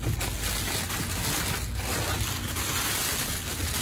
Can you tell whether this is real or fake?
real